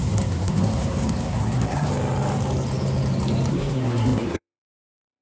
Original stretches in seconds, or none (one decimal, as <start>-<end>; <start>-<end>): 1.9-3.5